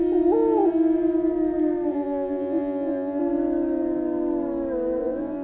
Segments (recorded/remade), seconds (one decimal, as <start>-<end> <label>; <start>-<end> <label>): 0.0-1.9 recorded; 1.9-3.2 remade; 3.2-5.0 recorded; 5.0-5.4 remade